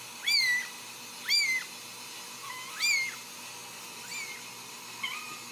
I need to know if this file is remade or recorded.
recorded